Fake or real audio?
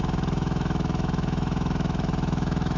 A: fake